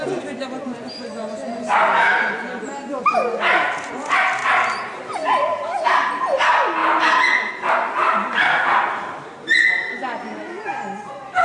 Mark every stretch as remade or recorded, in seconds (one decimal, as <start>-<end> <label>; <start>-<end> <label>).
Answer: 0.0-4.4 recorded; 4.4-6.1 remade; 6.1-6.8 recorded; 6.8-7.5 remade; 7.5-8.0 recorded; 8.0-10.5 remade; 10.5-11.4 recorded